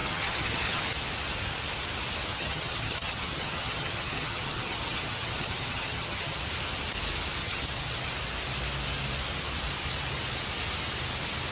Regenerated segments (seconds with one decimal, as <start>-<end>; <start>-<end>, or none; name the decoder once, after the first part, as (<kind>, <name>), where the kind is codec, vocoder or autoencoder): 0.0-0.8 (vocoder, HiFi-GAN); 2.3-6.4; 7.4-8.1